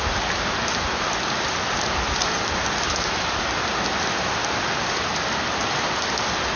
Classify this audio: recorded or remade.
recorded